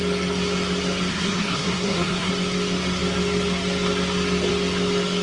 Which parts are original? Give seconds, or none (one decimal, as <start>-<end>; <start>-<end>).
0.0-1.1; 2.3-5.2